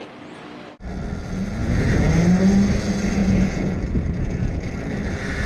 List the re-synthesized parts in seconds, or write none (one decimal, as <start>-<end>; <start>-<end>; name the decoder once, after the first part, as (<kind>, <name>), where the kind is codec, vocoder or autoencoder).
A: 1.6-2.1 (vocoder, Vocos); 3.2-4.6